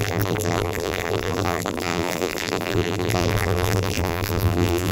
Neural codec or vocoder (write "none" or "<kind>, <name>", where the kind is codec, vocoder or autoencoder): vocoder, BigVGAN v2